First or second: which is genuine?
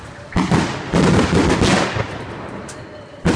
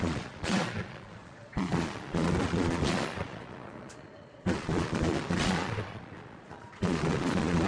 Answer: first